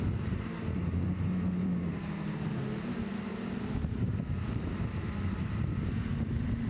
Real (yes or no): no